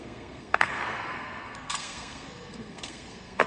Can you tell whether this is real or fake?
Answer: fake